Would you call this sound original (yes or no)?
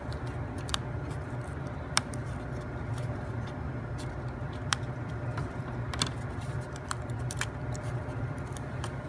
no